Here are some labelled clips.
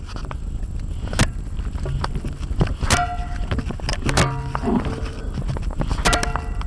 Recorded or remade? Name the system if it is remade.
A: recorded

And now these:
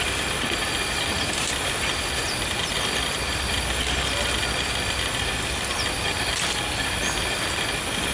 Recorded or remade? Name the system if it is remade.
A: recorded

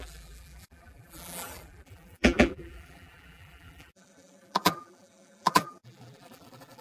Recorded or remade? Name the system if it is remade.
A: remade, vocoder, BigVGAN v2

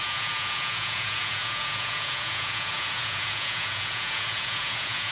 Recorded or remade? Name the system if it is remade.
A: remade, vocoder, Vocos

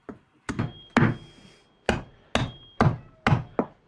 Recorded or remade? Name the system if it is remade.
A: recorded